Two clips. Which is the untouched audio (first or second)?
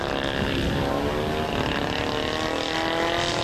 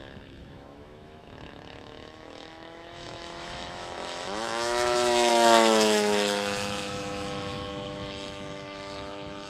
first